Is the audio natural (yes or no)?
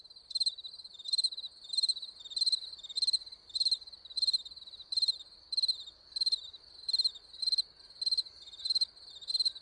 yes